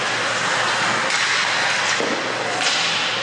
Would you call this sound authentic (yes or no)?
yes